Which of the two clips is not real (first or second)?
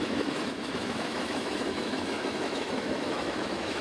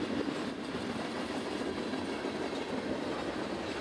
first